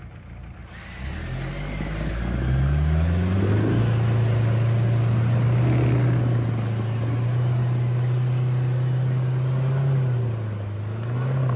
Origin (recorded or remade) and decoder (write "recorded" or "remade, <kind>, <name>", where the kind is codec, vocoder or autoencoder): recorded